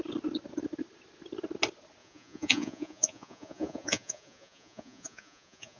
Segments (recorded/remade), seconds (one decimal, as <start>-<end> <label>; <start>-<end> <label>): 0.0-2.0 recorded; 2.0-5.8 remade